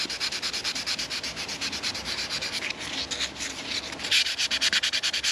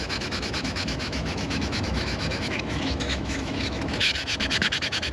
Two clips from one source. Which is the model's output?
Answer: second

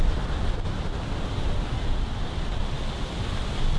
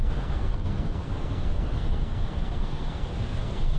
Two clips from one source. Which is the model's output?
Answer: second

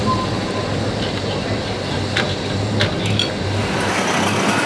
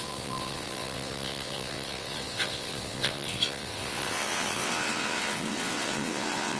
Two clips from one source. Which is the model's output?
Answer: second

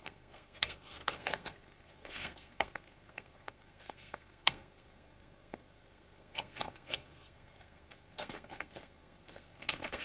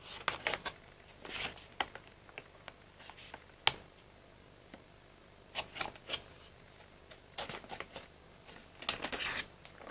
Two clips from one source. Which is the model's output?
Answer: first